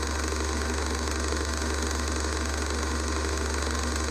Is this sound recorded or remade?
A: remade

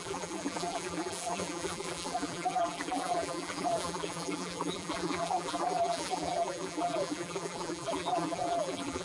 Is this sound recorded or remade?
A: remade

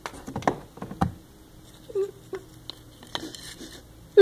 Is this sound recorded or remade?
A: recorded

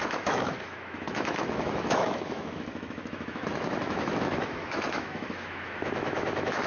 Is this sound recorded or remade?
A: remade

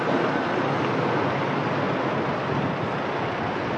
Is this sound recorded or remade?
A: recorded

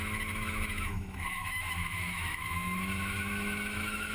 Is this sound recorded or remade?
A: remade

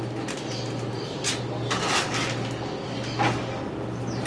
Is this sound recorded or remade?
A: recorded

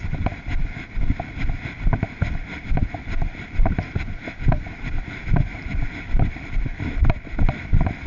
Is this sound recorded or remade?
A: recorded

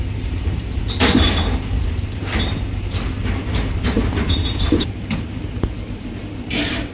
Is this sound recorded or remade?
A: remade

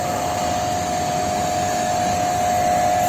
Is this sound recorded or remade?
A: recorded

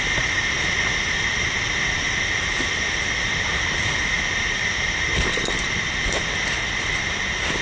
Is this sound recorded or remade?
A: recorded